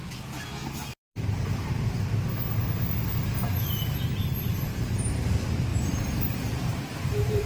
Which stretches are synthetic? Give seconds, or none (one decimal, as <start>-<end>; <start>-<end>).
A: 0.6-5.1; 5.7-7.5